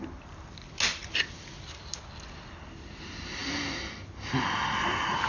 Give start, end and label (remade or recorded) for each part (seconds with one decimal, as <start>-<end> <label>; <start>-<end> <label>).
0.0-5.3 recorded